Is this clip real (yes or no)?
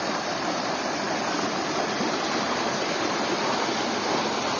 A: yes